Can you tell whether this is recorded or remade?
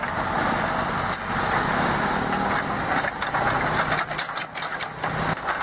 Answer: recorded